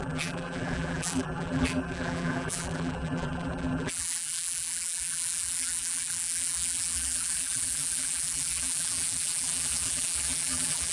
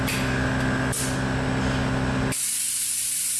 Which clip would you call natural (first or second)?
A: second